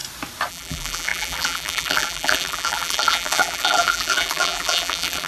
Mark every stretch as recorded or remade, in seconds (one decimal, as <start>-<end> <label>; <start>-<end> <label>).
0.0-0.5 recorded; 0.5-5.3 remade